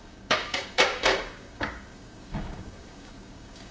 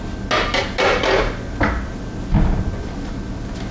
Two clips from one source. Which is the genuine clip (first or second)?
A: second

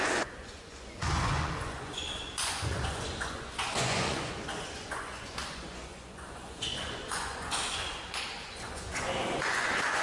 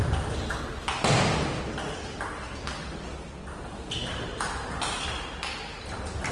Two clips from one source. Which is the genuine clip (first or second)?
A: second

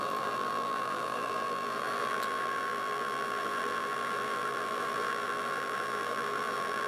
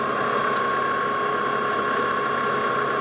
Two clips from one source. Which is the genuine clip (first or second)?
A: second